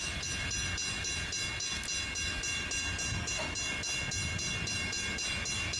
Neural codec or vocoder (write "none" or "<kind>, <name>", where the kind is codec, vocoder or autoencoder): none